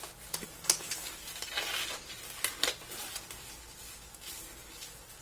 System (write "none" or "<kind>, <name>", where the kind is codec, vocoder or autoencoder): none